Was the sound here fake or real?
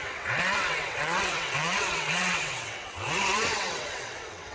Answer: fake